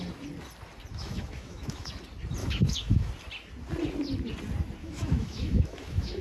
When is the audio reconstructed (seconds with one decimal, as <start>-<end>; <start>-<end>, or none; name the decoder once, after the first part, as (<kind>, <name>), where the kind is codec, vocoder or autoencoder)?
0.9-1.9 (autoencoder, DAC-VAE); 2.4-3.1; 4.8-6.2